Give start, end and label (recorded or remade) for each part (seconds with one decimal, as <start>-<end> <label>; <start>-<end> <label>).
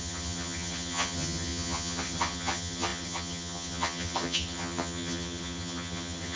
0.0-6.4 remade